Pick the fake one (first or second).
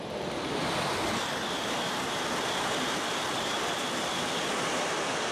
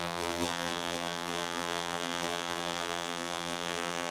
second